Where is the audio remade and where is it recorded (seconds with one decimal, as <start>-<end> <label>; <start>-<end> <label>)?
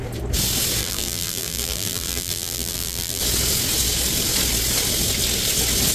0.0-0.8 recorded; 0.8-3.2 remade; 3.2-5.9 recorded